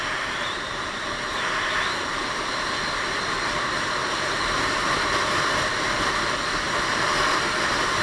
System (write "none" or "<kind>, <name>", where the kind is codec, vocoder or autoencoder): none